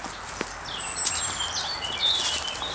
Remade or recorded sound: recorded